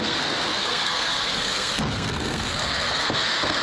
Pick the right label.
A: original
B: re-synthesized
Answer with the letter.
B